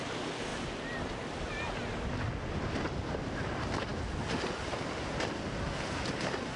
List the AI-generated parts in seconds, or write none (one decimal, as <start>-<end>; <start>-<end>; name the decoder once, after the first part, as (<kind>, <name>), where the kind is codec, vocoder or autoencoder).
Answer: none